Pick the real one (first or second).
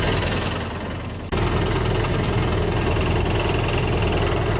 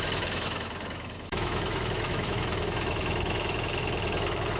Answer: first